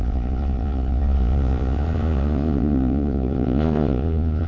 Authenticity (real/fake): fake